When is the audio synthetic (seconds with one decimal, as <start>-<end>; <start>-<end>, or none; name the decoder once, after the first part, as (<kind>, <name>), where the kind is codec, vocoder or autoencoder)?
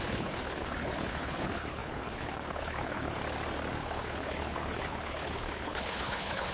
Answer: 0.0-3.2 (codec, HILCodec); 3.7-6.5